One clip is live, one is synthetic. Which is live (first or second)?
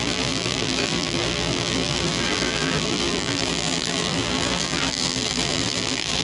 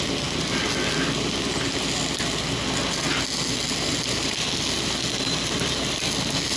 second